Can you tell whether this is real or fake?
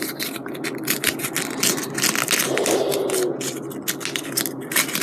real